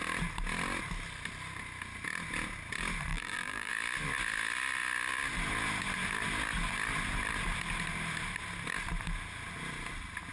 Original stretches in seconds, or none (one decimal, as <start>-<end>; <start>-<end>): 0.0-3.1; 3.7-10.3